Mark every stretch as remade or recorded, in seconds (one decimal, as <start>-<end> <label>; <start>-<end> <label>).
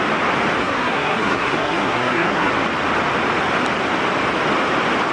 0.0-0.6 recorded; 0.6-2.5 remade; 2.5-5.1 recorded